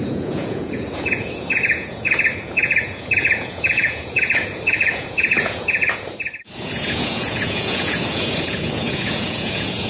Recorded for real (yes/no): no